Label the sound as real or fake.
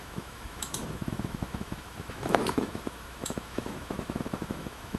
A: fake